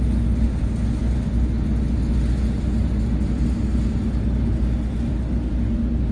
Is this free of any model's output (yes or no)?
yes